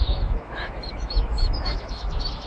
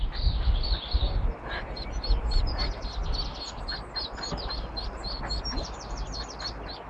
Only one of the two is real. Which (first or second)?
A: second